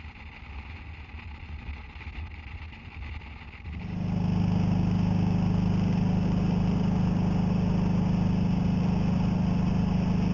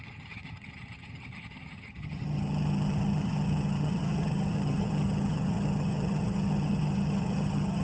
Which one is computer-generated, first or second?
second